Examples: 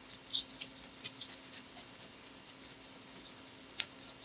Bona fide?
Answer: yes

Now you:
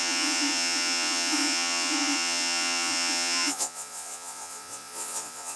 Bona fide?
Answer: no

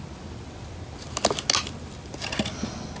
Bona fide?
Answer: yes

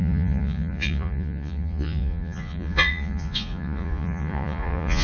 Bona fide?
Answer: no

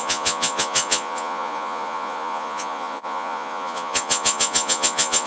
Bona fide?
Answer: no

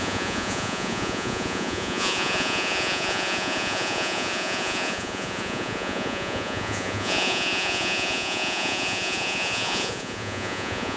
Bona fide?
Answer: no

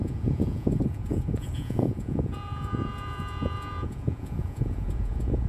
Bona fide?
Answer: no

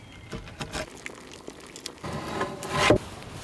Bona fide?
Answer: yes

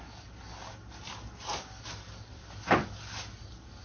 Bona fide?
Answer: yes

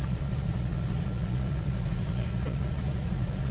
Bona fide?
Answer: no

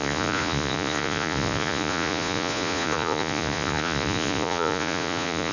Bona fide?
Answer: no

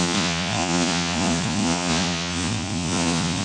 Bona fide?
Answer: no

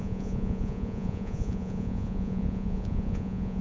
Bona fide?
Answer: no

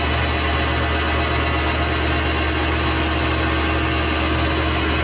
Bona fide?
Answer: yes